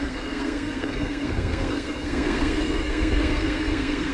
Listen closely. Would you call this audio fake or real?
fake